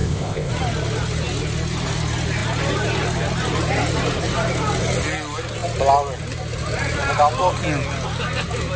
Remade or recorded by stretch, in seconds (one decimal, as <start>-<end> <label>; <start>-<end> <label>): 0.0-0.5 remade; 0.5-8.8 recorded